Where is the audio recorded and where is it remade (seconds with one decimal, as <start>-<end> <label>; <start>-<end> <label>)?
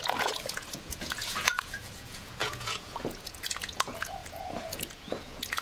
0.0-5.6 remade